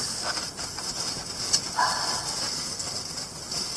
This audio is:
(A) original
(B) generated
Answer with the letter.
A